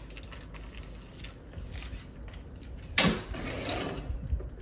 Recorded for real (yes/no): yes